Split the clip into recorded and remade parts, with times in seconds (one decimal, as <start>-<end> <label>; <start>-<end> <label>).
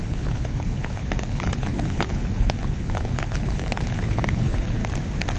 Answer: 0.0-4.8 remade; 4.8-5.4 recorded